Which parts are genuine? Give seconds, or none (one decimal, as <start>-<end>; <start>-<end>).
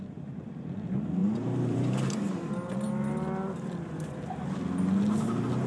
0.0-1.2; 2.5-5.7